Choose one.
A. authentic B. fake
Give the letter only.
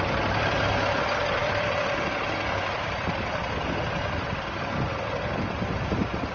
B